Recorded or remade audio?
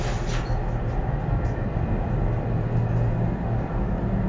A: recorded